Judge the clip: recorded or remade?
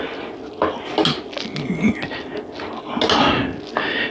recorded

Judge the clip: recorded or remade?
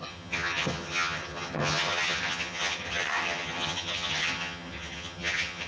remade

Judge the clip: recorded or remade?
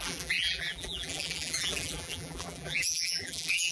remade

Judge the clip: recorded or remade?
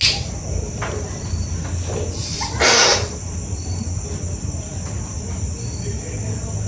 recorded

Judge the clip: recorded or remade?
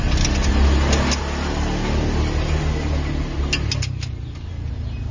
recorded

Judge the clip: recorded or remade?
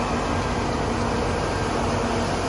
recorded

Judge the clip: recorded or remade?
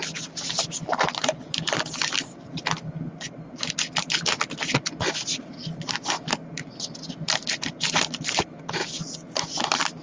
recorded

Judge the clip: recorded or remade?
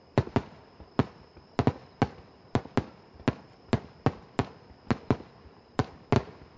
recorded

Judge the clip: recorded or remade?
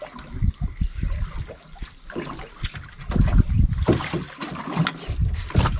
recorded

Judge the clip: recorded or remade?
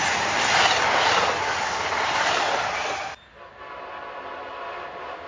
recorded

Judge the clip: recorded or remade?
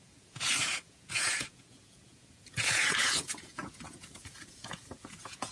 remade